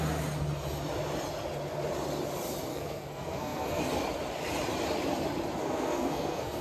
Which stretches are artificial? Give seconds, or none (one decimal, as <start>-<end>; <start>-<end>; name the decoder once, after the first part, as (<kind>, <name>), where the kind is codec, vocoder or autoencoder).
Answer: 2.7-3.8 (codec, SNAC); 5.6-6.6